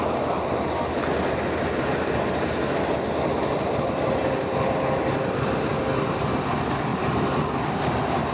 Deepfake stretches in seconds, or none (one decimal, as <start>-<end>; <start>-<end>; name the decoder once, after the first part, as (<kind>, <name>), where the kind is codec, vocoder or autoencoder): none